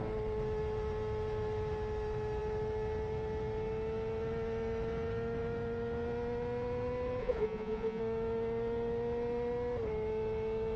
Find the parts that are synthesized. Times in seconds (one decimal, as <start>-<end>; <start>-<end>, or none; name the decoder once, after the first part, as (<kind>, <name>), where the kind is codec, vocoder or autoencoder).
7.2-8.0 (vocoder, Vocos)